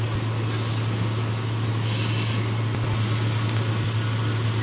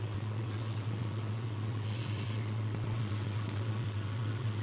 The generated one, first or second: second